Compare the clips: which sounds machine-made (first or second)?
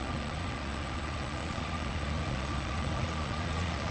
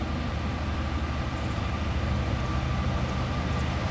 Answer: first